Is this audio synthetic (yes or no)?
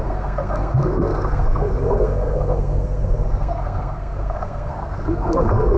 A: yes